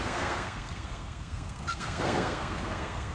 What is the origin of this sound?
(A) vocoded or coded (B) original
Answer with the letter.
A